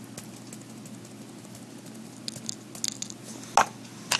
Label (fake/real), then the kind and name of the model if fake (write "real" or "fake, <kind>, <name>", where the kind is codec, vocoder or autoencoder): real